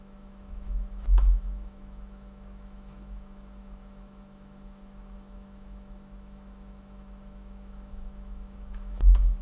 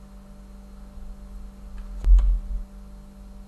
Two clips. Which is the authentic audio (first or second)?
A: second